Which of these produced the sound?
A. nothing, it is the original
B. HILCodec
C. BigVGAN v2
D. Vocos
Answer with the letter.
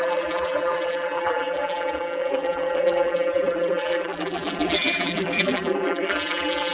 C